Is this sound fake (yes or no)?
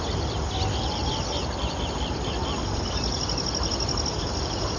yes